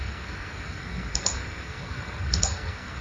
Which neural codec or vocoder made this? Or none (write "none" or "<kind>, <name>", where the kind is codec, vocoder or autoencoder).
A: codec, SNAC